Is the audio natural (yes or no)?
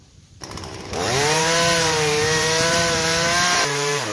no